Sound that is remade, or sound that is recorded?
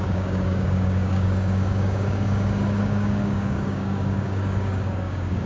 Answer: remade